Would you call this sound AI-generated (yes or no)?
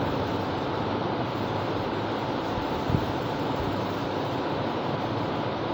yes